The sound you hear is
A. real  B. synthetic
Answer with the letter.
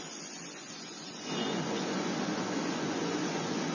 B